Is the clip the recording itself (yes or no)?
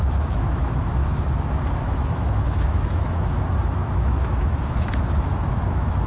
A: no